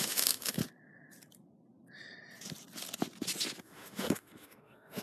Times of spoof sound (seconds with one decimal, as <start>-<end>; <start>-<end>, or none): 0.0-0.6; 3.6-5.0